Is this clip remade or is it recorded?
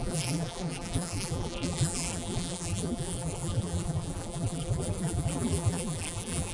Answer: remade